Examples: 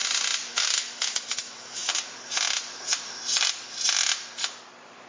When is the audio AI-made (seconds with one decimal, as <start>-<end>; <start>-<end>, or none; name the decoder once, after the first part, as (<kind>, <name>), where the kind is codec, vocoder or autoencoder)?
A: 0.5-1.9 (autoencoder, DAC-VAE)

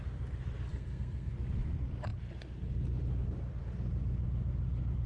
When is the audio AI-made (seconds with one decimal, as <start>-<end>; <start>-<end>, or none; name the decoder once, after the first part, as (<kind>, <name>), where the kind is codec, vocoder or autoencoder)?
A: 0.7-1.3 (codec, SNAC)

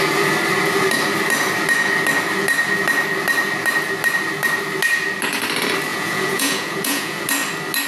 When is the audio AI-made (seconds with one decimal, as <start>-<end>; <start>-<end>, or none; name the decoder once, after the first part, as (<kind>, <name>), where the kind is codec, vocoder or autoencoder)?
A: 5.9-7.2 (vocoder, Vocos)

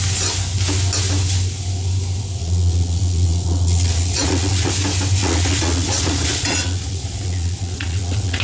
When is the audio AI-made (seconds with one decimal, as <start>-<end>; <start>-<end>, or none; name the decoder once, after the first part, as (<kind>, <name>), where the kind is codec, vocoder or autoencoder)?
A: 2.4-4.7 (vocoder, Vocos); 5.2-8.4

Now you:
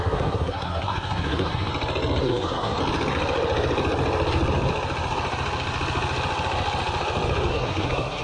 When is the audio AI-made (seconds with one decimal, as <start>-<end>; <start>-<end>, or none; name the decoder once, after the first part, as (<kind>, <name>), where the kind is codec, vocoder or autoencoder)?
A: 0.0-1.7 (codec, SNAC); 2.2-2.8; 7.5-8.2